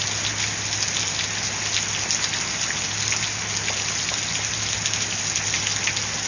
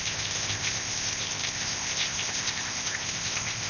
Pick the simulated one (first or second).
second